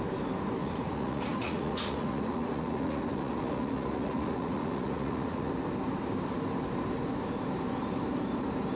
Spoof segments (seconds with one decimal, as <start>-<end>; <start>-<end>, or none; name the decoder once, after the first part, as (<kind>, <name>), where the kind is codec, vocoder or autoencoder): 0.6-5.5 (vocoder, Vocos)